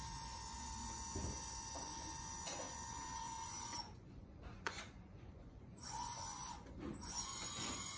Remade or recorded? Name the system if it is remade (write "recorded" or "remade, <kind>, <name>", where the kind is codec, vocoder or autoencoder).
remade, vocoder, Vocos